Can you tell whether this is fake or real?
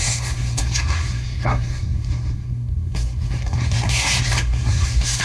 fake